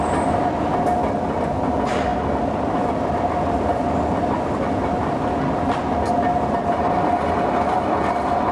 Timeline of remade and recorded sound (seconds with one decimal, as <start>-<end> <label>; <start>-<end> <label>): 0.0-8.5 recorded